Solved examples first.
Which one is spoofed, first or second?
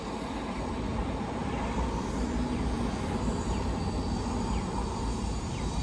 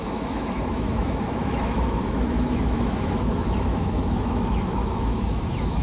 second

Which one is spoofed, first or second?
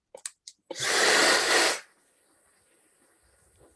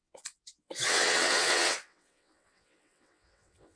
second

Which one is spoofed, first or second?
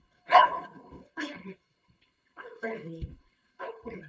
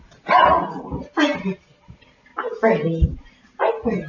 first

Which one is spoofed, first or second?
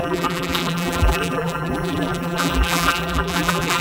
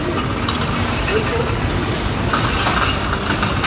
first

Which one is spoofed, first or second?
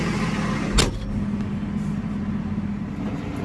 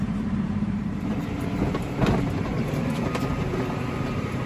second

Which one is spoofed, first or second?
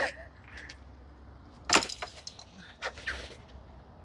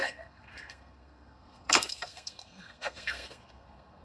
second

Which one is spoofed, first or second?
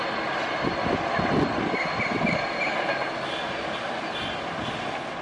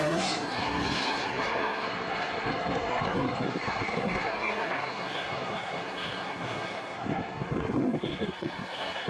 second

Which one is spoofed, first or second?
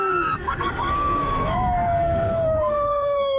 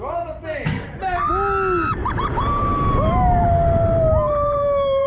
first